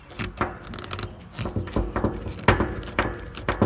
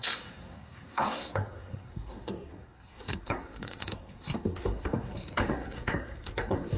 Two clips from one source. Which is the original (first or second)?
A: first